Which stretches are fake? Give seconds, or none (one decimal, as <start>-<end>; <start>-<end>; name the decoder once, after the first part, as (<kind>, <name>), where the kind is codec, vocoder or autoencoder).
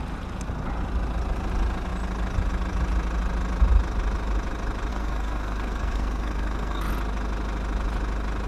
4.9-6.8 (codec, SNAC)